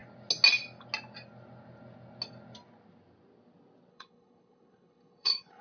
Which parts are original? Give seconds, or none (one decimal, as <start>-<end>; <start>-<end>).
0.0-3.9